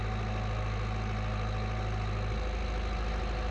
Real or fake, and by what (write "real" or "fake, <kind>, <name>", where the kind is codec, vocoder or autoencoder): real